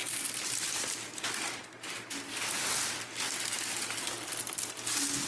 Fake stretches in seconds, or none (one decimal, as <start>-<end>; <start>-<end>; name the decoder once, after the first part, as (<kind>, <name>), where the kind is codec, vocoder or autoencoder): none